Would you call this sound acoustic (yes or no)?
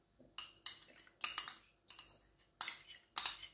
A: yes